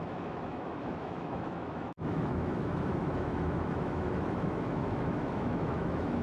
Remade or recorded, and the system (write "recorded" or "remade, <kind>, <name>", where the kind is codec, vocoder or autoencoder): remade, autoencoder, DAC-VAE